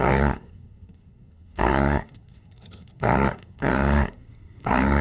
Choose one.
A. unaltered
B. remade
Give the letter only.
B